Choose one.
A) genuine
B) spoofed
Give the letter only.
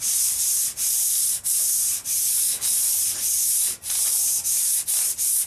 A